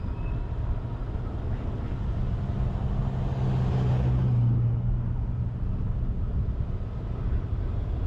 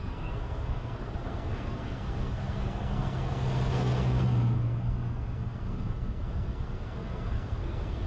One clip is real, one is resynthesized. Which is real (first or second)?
first